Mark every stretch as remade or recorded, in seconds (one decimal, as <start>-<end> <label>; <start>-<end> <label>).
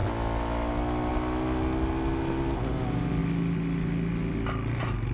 0.0-5.1 recorded